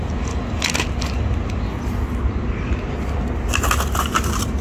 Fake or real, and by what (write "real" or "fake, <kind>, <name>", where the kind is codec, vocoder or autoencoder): real